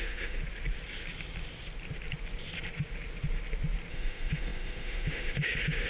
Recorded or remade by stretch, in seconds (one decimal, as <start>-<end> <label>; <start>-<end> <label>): 0.0-0.4 remade; 0.4-3.9 recorded; 3.9-5.9 remade